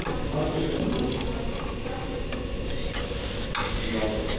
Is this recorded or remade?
recorded